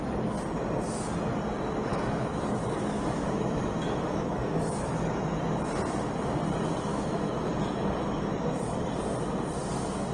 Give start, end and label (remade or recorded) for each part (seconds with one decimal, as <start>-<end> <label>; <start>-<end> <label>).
0.0-1.9 recorded; 1.9-5.1 remade; 5.1-6.9 recorded; 6.9-7.5 remade; 7.5-10.1 recorded